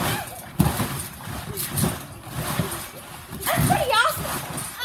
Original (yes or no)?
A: yes